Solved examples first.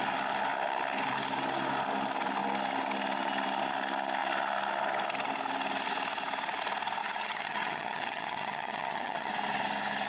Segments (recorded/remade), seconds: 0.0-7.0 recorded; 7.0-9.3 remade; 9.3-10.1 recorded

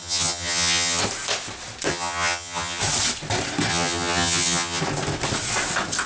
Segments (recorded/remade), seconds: 0.0-1.0 remade; 1.0-1.9 recorded; 1.9-2.8 remade; 2.8-3.7 recorded; 3.7-4.8 remade; 4.8-6.1 recorded

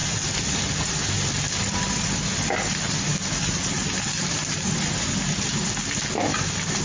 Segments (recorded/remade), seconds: 0.0-6.8 recorded

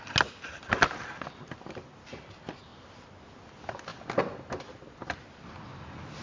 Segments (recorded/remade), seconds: 0.0-6.2 recorded

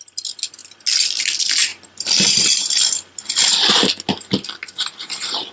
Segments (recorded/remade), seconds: 0.0-5.5 recorded

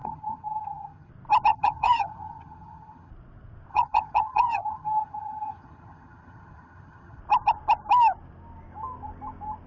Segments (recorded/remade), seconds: 0.0-1.1 remade; 1.1-1.5 recorded; 1.5-3.1 remade; 3.1-3.7 recorded; 3.7-7.2 remade; 7.2-9.7 recorded

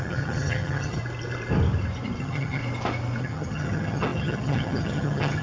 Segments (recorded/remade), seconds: 0.0-1.0 remade; 1.0-2.2 recorded; 2.2-2.6 remade; 2.6-3.2 recorded; 3.2-5.4 remade

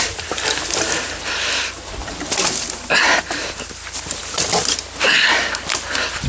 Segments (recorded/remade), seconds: 0.0-6.3 recorded